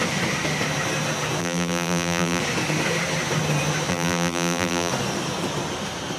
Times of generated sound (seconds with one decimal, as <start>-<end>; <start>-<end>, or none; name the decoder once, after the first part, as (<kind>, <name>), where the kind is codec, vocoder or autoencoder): 1.4-2.4 (vocoder, BigVGAN v2); 3.9-4.9